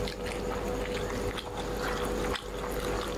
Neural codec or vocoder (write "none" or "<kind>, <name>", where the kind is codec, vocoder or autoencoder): none